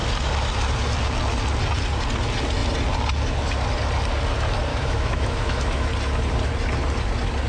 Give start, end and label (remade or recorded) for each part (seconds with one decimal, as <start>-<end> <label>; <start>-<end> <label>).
0.0-4.7 recorded; 4.7-5.9 remade; 5.9-7.5 recorded